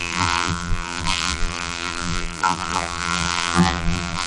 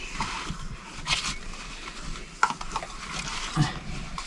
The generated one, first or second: first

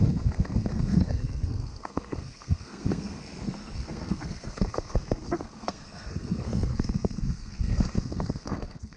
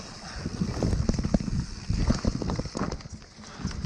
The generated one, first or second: first